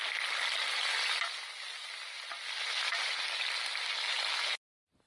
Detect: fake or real real